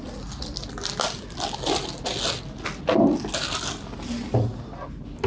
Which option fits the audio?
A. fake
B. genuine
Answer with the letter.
B